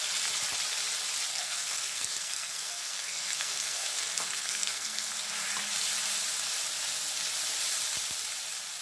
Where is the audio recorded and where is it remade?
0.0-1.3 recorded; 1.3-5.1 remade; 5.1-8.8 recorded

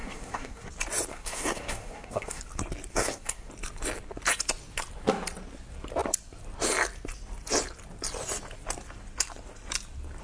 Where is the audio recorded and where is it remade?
0.0-0.7 remade; 0.7-1.1 recorded; 1.1-2.4 remade; 2.4-2.9 recorded; 2.9-3.5 remade; 3.5-10.2 recorded

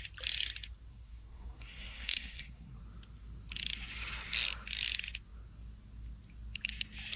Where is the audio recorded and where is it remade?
0.0-0.9 recorded; 0.9-2.8 remade; 2.8-7.2 recorded